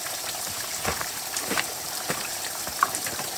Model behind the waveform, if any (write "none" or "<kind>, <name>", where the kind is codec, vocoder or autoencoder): vocoder, BigVGAN v2